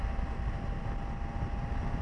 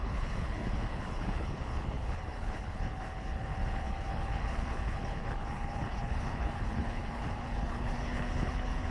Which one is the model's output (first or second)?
second